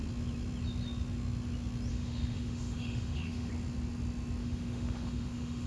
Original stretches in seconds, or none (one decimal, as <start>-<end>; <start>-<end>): 0.0-1.9; 3.5-4.4